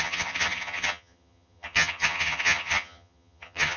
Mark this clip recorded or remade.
remade